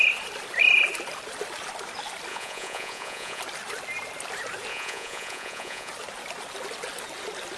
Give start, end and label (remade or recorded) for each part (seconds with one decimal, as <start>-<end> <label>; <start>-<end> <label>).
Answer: 0.0-2.3 recorded; 2.3-3.4 remade; 3.4-4.7 recorded; 4.7-5.9 remade; 5.9-7.6 recorded